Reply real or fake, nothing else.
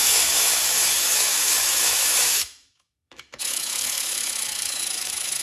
fake